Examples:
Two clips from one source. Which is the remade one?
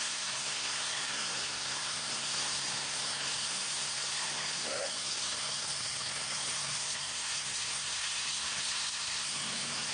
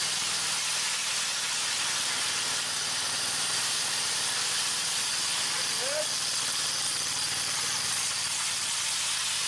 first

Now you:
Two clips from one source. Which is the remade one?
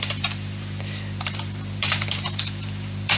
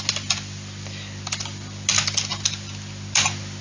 first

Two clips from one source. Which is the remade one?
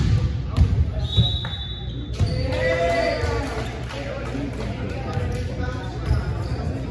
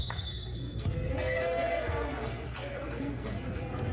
second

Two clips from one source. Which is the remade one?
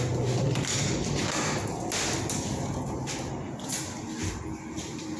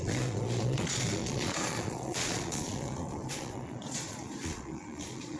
second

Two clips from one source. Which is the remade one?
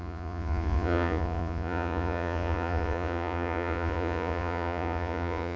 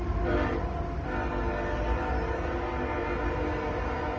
first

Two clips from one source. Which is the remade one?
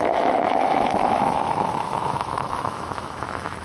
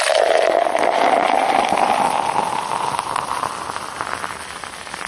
first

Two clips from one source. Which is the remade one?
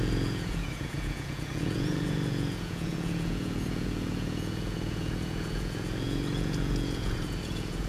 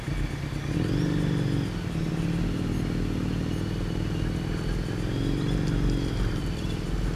first